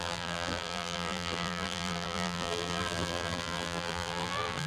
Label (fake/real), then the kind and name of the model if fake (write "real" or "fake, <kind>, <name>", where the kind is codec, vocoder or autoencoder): fake, vocoder, BigVGAN v2